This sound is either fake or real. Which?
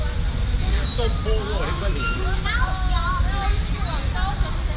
real